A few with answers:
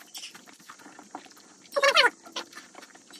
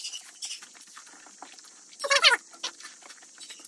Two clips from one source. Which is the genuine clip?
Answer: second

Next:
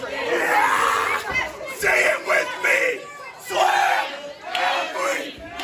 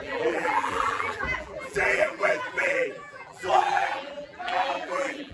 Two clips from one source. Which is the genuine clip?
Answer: first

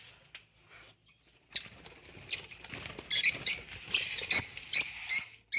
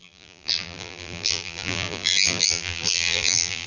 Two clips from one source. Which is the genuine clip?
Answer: first